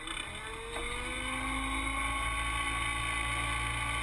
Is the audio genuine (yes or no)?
yes